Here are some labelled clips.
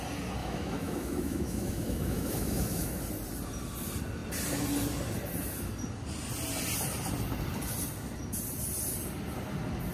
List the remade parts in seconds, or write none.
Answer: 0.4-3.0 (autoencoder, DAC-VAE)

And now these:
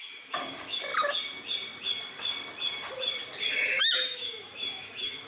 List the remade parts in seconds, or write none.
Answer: 0.0-0.9 (autoencoder, DAC-VAE); 3.8-5.3